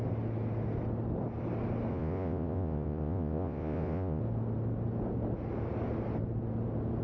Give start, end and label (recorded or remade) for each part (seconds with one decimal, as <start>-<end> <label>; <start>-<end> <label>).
0.0-1.9 recorded; 1.9-4.2 remade; 4.2-7.0 recorded